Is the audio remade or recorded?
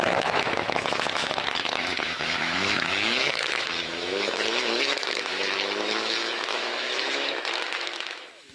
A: remade